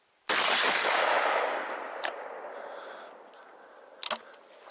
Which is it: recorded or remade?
recorded